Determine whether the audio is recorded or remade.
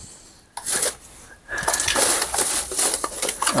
recorded